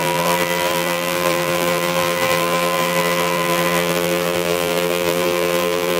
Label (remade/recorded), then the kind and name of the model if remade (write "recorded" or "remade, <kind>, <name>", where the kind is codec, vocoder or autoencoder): remade, vocoder, BigVGAN v2